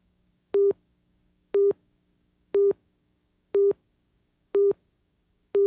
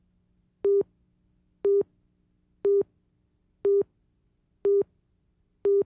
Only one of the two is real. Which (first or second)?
second